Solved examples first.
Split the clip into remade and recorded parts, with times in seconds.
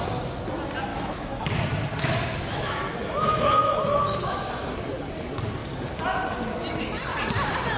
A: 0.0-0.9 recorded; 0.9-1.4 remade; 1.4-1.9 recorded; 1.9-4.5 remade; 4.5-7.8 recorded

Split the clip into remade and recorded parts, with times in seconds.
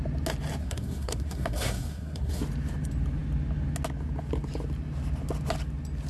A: 0.0-0.6 recorded; 0.6-2.4 remade; 2.4-6.1 recorded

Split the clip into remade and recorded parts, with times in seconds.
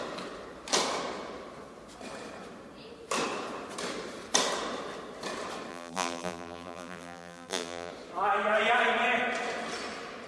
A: 0.0-5.7 recorded; 5.7-7.9 remade; 7.9-10.3 recorded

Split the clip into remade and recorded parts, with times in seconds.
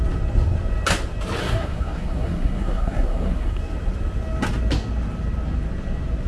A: 0.0-1.4 recorded; 1.4-3.6 remade; 3.6-6.3 recorded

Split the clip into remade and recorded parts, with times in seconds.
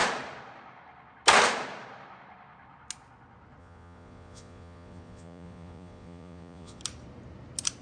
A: 0.0-3.6 recorded; 3.6-6.8 remade; 6.8-7.8 recorded